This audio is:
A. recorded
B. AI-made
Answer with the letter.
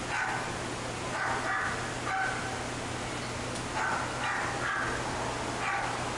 A